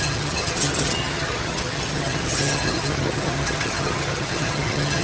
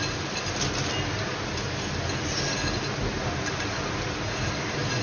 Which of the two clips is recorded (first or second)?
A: second